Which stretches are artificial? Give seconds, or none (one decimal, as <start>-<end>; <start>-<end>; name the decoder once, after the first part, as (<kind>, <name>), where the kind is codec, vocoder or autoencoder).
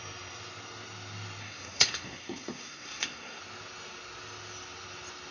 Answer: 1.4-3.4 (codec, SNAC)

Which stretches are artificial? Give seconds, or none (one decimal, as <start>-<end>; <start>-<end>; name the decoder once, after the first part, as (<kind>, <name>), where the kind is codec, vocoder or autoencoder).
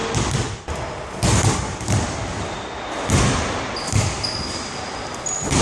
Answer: none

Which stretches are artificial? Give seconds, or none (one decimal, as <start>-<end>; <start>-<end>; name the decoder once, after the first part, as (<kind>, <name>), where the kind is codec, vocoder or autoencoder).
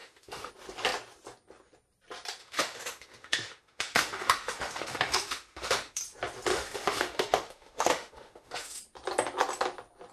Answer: 0.0-0.5 (autoencoder, DAC-VAE); 2.4-6.0; 6.5-8.8